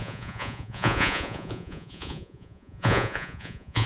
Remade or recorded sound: remade